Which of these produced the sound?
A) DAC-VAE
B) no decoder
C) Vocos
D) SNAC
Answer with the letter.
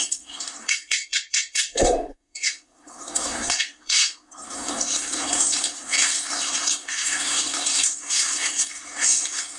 D